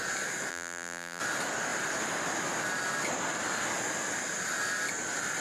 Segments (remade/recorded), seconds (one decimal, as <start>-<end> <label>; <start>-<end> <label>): 0.0-0.5 recorded; 0.5-1.2 remade; 1.2-5.4 recorded